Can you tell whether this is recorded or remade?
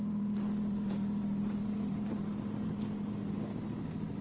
recorded